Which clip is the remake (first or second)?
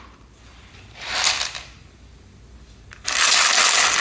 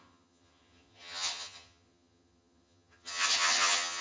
second